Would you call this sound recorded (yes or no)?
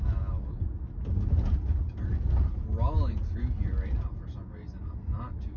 yes